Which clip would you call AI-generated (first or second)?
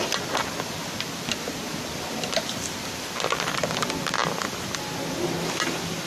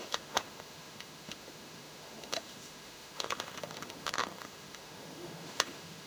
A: second